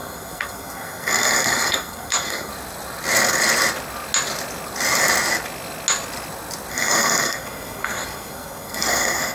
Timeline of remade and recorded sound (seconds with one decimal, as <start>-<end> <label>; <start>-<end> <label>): 0.0-2.5 remade; 2.5-6.7 recorded; 6.7-9.3 remade